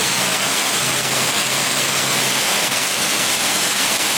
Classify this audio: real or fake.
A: fake